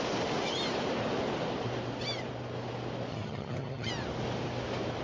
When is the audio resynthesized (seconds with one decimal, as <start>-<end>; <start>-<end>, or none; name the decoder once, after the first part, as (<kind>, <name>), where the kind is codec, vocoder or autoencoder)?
3.1-3.9 (vocoder, HiFi-GAN)